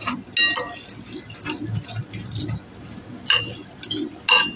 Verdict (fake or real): real